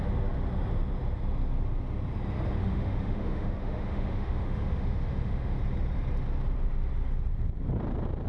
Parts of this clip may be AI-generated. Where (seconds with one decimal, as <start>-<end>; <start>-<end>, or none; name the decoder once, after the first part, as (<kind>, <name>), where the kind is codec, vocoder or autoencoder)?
2.6-5.6 (autoencoder, DAC-VAE)